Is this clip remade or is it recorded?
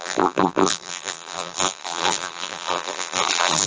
remade